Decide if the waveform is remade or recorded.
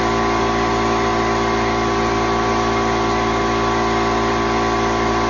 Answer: recorded